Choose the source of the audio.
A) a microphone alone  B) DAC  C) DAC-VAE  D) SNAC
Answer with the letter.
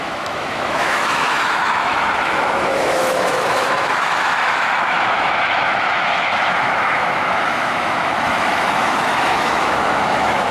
C